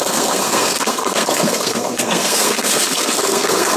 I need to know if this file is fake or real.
fake